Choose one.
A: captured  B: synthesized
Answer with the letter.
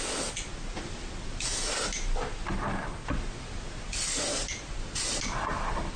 A